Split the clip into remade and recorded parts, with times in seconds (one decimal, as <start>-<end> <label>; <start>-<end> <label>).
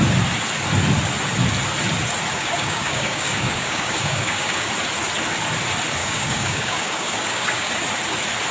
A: 0.0-2.3 recorded; 2.3-4.7 remade; 4.7-6.0 recorded; 6.0-7.7 remade; 7.7-8.5 recorded